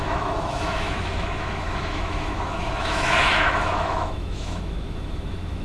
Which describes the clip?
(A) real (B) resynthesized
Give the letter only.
B